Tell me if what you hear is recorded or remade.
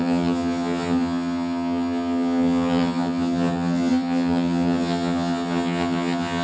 remade